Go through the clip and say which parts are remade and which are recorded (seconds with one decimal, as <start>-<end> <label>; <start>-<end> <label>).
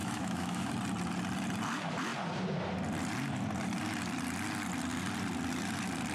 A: 0.0-0.7 remade; 0.7-6.1 recorded